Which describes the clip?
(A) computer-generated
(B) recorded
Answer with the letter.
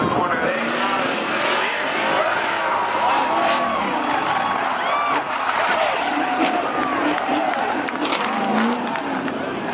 B